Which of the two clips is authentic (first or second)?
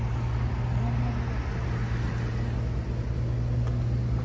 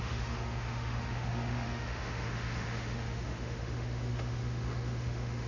first